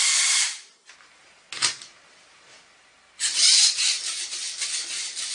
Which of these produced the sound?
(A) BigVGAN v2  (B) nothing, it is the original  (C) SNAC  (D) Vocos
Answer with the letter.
B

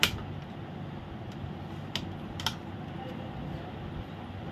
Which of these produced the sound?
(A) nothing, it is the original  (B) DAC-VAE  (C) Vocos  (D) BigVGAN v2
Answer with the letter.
A